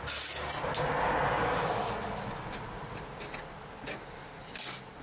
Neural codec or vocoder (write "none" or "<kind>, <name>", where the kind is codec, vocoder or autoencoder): none